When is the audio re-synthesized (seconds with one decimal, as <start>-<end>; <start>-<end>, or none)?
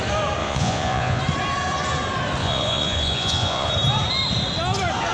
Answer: 0.4-1.2; 2.4-3.7